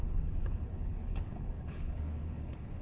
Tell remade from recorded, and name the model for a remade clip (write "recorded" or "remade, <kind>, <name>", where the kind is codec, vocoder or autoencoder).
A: remade, codec, HILCodec